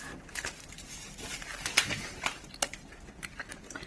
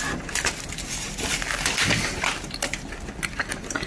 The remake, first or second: first